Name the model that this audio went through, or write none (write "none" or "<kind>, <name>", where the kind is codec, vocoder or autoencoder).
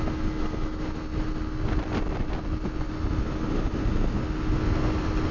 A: none